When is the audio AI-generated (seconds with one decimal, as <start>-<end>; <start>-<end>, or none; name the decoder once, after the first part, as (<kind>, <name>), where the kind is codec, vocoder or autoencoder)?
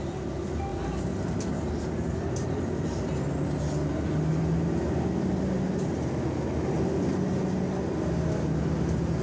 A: none